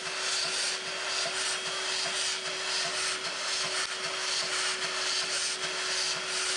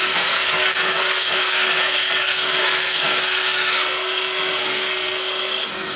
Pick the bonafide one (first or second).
first